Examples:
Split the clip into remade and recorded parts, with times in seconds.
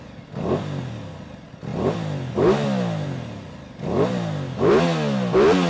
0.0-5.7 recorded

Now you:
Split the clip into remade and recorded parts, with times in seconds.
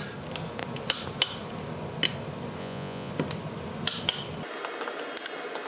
0.0-2.6 recorded; 2.6-3.1 remade; 3.1-5.7 recorded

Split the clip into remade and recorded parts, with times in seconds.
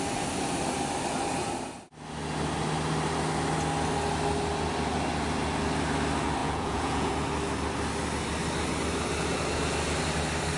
0.0-6.4 recorded; 6.4-7.1 remade; 7.1-10.6 recorded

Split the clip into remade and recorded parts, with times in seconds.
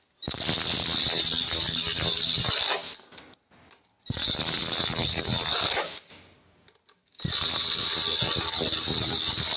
0.0-9.6 recorded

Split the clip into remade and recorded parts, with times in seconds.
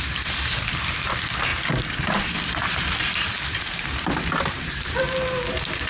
0.0-5.9 recorded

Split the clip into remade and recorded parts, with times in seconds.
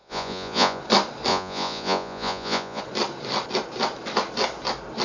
0.0-0.8 remade; 0.8-1.3 recorded; 1.3-2.8 remade; 2.8-5.0 recorded